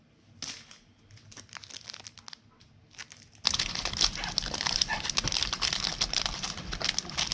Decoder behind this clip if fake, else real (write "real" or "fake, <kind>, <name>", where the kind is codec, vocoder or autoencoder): real